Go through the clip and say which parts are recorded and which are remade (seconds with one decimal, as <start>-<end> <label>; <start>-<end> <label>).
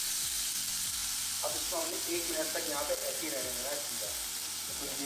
0.0-1.0 recorded; 1.0-2.5 remade; 2.5-5.1 recorded